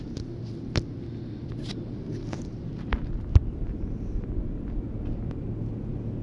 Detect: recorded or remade recorded